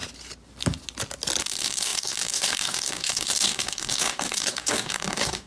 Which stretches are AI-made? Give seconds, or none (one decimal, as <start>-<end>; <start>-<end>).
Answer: 1.4-5.5